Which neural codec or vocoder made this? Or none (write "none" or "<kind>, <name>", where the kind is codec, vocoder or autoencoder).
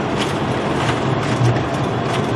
none